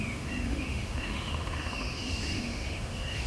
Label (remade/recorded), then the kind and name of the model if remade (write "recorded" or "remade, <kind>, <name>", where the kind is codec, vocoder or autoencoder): remade, autoencoder, DAC-VAE